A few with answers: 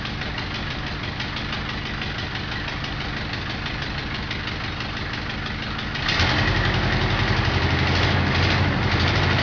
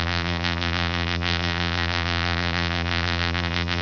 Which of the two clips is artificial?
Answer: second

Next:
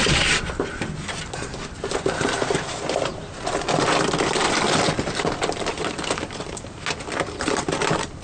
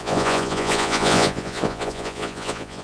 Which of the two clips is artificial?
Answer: second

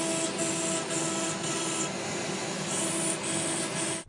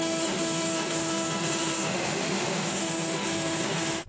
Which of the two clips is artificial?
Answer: second